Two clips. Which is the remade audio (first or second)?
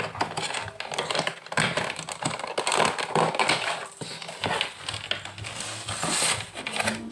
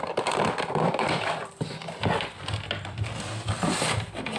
second